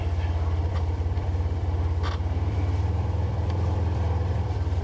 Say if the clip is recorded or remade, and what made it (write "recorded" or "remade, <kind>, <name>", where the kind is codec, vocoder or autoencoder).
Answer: remade, vocoder, BigVGAN v2